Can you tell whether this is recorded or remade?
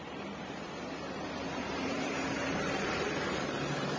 remade